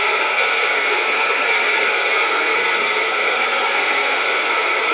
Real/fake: fake